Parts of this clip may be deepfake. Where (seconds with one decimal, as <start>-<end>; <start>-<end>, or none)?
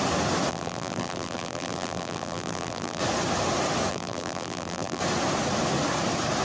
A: 0.5-3.0; 3.9-5.0